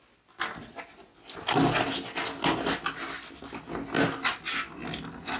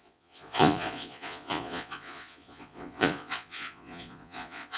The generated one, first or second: second